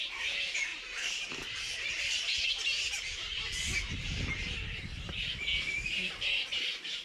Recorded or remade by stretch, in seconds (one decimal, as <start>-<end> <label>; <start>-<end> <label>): 0.0-5.5 recorded; 5.5-6.1 remade; 6.1-7.0 recorded